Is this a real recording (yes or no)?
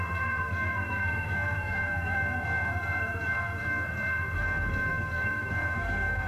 no